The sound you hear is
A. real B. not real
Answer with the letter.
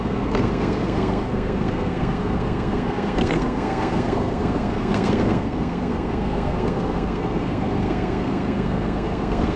B